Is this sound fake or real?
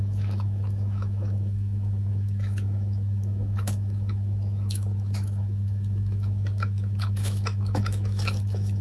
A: fake